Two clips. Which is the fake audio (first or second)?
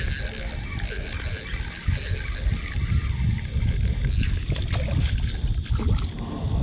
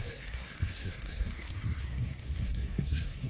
second